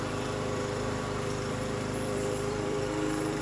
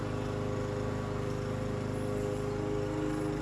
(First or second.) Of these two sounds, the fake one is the first